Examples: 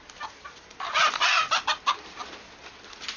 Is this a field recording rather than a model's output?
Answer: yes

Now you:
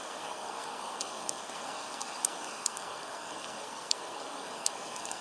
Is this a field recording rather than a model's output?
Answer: no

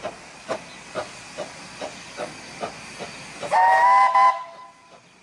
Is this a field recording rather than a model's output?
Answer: yes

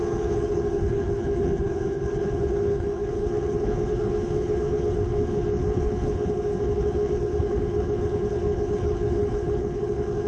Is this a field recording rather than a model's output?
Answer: no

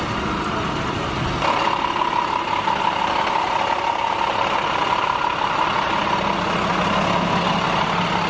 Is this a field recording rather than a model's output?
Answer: yes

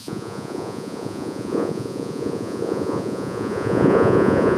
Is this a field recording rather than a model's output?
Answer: no